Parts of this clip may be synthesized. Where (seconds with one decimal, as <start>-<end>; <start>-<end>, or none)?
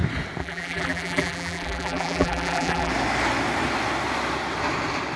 0.4-2.9